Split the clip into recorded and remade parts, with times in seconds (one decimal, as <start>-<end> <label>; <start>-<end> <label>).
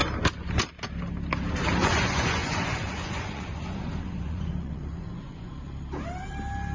0.0-1.8 recorded; 1.8-5.5 remade; 5.5-6.7 recorded